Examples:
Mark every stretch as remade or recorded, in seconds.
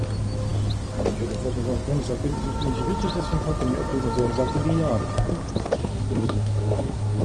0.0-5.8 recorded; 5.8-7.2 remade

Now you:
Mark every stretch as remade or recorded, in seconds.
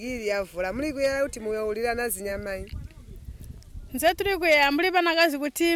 0.0-5.8 recorded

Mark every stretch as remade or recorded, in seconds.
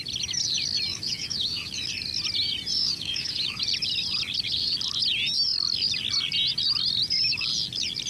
0.0-0.9 recorded; 0.9-1.9 remade; 1.9-2.8 recorded; 2.8-3.6 remade; 3.6-8.1 recorded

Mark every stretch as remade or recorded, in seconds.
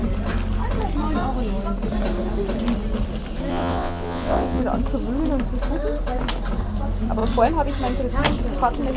0.0-3.5 recorded; 3.5-4.6 remade; 4.6-9.0 recorded